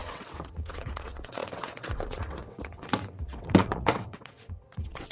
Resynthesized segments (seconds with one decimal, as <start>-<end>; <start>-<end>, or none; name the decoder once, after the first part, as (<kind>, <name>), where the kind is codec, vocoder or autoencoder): 0.0-5.1 (vocoder, WaveNeXt)